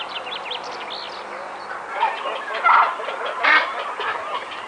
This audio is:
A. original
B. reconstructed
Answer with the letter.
A